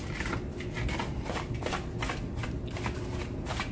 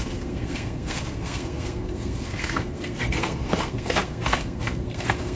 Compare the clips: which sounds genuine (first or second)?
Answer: first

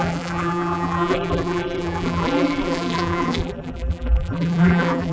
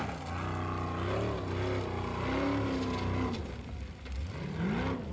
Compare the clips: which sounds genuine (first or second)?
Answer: second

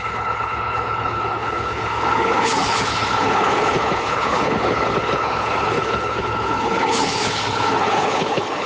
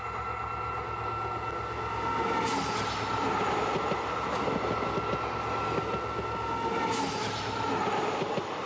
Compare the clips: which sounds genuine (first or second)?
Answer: second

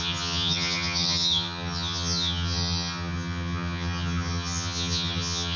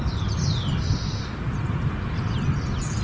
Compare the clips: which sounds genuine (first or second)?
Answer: second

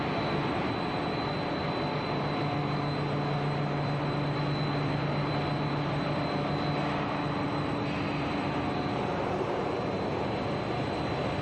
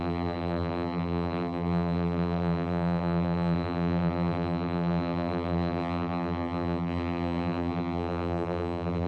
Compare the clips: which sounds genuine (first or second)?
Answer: first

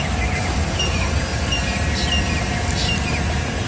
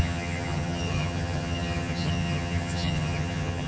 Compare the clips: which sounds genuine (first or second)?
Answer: first